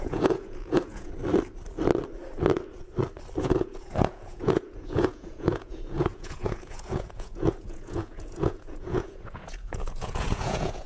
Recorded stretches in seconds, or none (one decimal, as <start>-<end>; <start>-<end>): 1.2-3.4